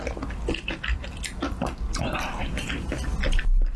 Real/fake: real